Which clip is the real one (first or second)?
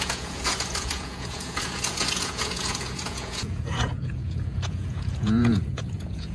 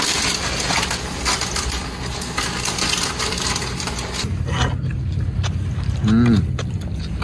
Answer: second